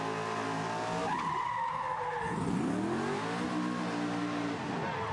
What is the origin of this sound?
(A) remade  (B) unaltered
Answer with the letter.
B